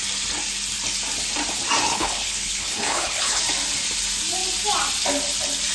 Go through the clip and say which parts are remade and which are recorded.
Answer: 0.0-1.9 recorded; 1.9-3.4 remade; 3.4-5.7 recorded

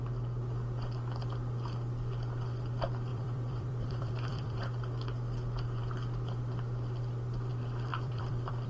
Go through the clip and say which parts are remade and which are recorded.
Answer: 0.0-3.1 recorded; 3.1-4.6 remade; 4.6-7.9 recorded; 7.9-8.7 remade

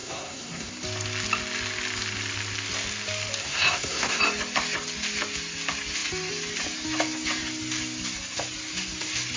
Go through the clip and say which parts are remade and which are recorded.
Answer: 0.0-0.7 remade; 0.7-3.4 recorded; 3.4-4.2 remade; 4.2-9.4 recorded

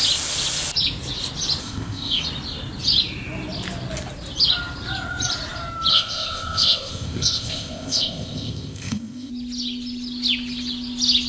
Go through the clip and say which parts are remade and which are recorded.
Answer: 0.0-1.6 recorded; 1.6-2.2 remade; 2.2-5.9 recorded; 5.9-9.3 remade; 9.3-11.3 recorded